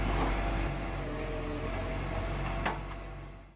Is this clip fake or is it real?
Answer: real